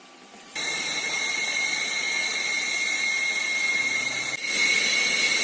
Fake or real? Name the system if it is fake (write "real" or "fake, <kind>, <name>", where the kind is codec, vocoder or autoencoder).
real